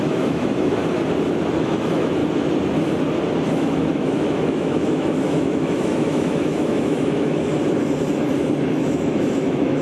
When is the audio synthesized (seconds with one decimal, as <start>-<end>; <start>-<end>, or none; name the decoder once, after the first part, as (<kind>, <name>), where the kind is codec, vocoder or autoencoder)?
0.0-0.8 (autoencoder, DAC-VAE); 1.6-2.2; 3.5-7.5; 8.7-9.8